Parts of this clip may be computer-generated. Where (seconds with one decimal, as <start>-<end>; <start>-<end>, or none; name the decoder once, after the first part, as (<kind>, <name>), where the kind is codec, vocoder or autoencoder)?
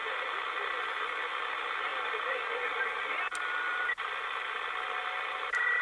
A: 1.9-5.8 (vocoder, BigVGAN v2)